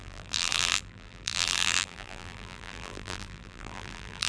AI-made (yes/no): yes